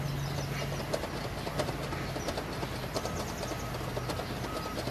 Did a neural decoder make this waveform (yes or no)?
no